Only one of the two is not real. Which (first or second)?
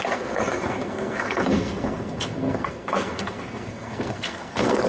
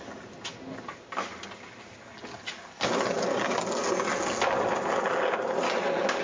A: first